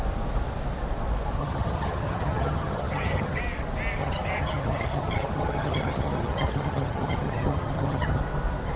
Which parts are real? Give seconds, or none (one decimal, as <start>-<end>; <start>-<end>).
0.0-1.4; 3.4-4.0; 8.2-8.8